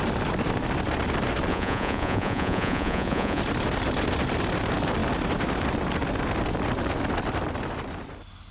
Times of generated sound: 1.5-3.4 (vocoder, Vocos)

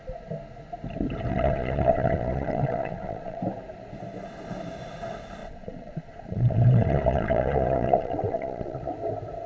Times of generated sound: 1.3-3.4 (vocoder, Vocos); 5.4-8.9

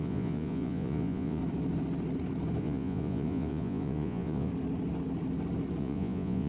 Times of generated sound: 0.0-1.4 (vocoder, Vocos); 2.6-4.5; 5.8-6.5

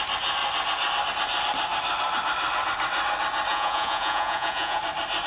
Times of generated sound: 3.5-4.8 (vocoder, Vocos)

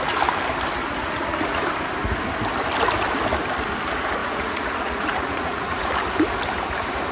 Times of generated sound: 0.8-1.6 (vocoder, Vocos); 4.2-5.9

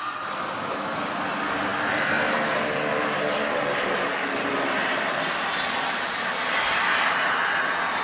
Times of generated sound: none

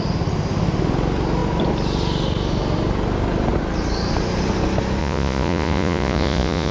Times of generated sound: 5.0-6.7 (vocoder, Vocos)